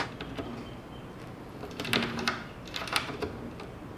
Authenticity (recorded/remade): recorded